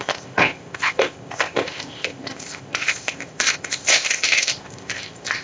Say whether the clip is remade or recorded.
remade